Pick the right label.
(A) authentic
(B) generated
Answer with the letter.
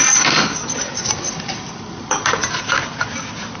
A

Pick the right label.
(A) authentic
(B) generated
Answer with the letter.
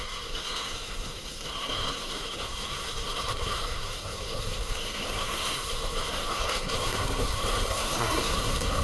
B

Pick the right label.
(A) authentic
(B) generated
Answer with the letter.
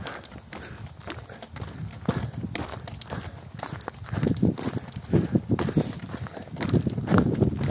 A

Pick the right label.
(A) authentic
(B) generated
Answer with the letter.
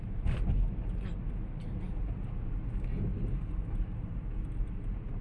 A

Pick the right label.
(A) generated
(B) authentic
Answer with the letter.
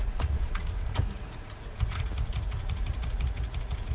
A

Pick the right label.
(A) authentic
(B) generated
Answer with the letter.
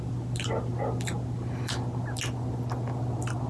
A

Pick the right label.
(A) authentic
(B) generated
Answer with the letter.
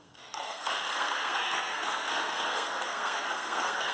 B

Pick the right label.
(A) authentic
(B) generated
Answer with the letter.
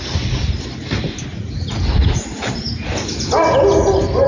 A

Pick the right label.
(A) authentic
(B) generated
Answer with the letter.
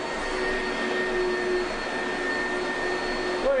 A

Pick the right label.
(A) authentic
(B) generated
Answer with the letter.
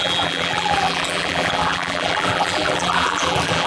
B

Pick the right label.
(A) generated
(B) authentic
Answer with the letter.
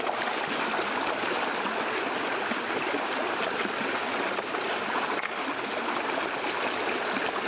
B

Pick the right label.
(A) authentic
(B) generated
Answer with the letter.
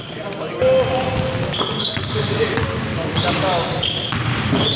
A